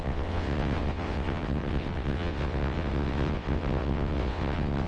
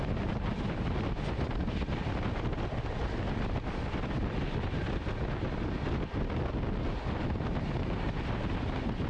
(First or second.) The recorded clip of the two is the second